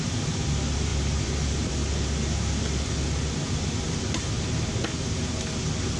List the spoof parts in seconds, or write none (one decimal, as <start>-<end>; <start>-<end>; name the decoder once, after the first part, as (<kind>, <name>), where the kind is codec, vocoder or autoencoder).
none